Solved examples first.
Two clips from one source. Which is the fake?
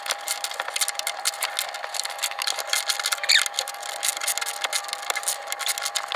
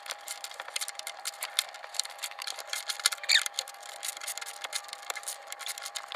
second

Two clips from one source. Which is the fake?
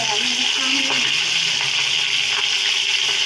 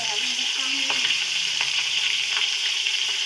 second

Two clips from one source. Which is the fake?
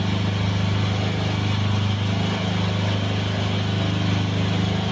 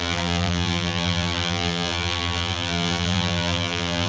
second